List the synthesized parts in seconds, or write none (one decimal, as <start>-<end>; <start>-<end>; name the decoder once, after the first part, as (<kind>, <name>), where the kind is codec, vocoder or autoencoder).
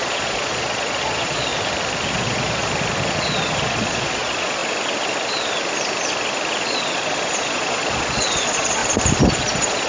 0.0-1.5 (vocoder, Vocos); 2.1-2.6; 3.1-4.6; 6.6-8.8; 9.3-9.9